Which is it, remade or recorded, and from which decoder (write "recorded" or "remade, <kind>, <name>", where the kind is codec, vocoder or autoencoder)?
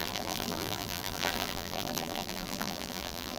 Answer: remade, vocoder, BigVGAN v2